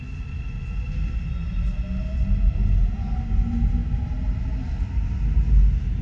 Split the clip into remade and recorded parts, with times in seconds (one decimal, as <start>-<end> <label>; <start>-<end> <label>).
0.0-6.0 recorded